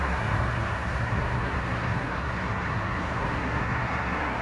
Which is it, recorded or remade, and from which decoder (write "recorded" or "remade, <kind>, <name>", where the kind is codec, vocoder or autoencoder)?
remade, codec, SNAC